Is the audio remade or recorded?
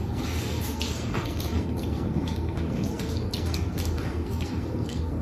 remade